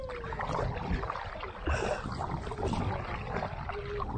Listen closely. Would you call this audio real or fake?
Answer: real